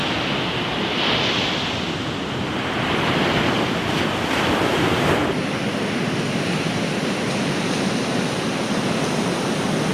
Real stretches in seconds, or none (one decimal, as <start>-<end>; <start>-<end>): 0.0-9.9

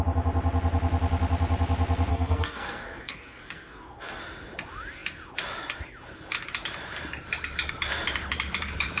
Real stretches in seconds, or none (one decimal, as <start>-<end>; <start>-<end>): 0.0-2.1; 4.2-9.0

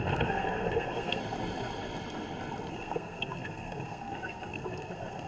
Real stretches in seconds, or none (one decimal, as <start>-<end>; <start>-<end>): 1.2-2.7

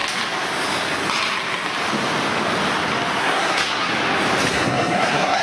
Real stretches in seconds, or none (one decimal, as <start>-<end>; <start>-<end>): 0.0-3.2; 3.9-4.5

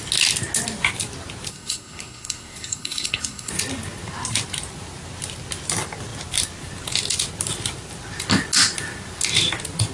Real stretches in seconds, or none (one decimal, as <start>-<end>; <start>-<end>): 0.0-1.5; 3.5-9.9

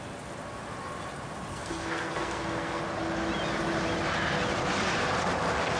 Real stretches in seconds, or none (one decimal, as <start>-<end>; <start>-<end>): 0.0-1.5; 2.8-5.8